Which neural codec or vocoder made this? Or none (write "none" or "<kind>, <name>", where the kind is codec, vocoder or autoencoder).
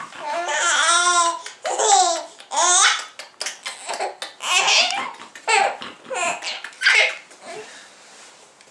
none